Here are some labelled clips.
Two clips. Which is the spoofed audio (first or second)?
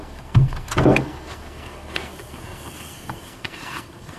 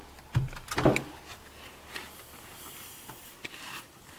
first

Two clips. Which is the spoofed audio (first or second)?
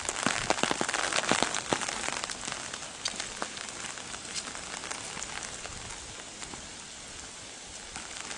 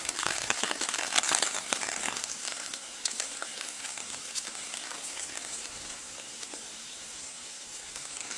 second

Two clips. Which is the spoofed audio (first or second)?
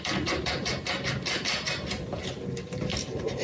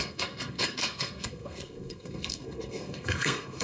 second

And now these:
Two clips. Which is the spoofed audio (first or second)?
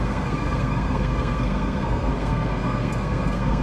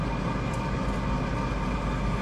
first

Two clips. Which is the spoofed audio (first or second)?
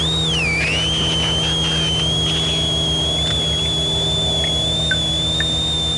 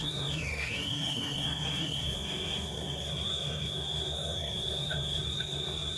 second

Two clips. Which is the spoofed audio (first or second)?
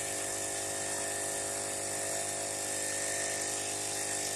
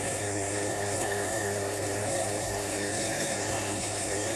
second